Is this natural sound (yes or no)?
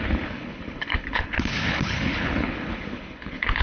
no